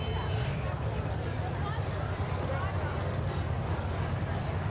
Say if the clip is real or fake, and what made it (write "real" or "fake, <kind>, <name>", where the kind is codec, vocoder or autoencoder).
fake, vocoder, BigVGAN v2